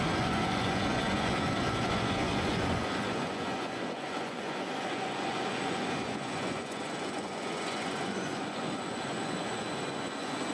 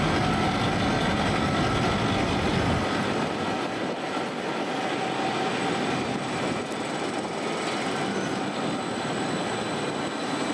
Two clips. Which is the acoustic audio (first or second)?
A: second